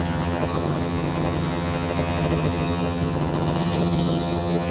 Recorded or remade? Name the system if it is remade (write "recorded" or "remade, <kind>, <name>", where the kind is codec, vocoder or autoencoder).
remade, vocoder, HiFi-GAN